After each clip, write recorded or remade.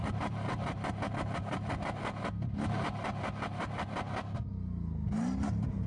recorded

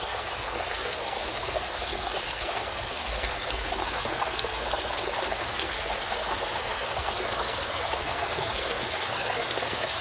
remade